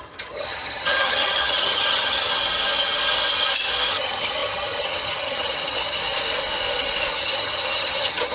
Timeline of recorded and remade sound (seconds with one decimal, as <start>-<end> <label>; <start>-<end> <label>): 0.0-2.3 remade; 2.3-3.9 recorded; 3.9-6.0 remade; 6.0-7.1 recorded; 7.1-8.3 remade